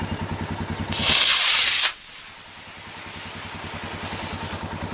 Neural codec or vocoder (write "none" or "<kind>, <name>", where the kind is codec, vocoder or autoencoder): none